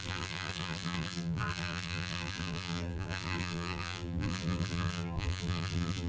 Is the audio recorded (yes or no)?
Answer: no